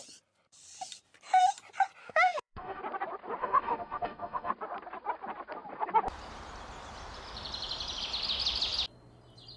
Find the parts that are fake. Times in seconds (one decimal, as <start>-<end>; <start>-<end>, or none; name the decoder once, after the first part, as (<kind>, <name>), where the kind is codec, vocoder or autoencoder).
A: 2.0-2.8 (autoencoder, DAC-VAE); 3.4-4.5